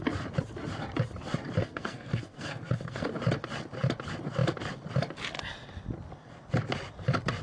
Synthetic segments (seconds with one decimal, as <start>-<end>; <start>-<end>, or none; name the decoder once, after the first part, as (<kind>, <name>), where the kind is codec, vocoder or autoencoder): 1.6-3.1 (codec, SNAC)